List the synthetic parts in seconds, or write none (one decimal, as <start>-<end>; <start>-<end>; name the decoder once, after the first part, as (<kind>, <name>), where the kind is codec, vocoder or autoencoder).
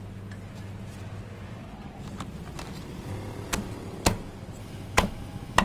4.6-5.6 (autoencoder, DAC-VAE)